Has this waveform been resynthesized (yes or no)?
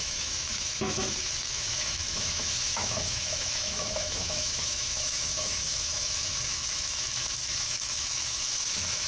yes